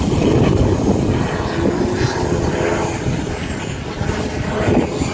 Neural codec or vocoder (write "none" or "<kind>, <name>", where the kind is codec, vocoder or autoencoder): none